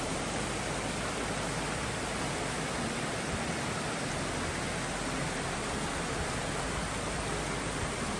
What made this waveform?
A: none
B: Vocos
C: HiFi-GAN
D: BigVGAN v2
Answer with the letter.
A